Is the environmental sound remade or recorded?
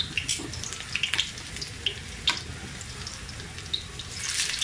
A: recorded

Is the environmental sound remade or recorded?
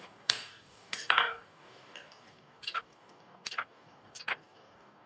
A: remade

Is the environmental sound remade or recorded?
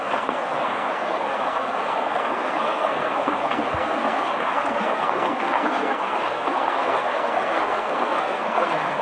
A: remade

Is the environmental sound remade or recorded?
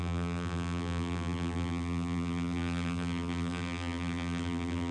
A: remade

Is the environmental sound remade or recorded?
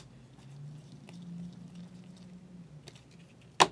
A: recorded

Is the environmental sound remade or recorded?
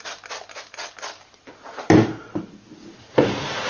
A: recorded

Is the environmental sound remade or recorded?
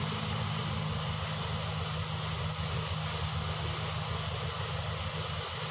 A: recorded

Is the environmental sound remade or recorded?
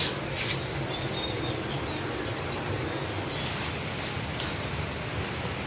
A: recorded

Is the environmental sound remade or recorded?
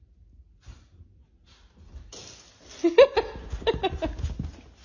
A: recorded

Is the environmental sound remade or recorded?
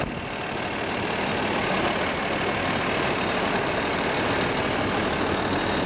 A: recorded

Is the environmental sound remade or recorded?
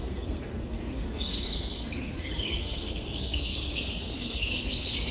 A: remade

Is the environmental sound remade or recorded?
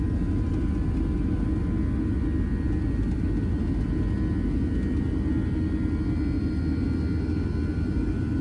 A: recorded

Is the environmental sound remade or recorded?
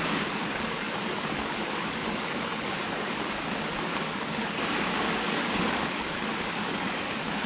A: remade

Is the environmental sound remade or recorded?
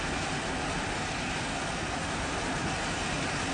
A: recorded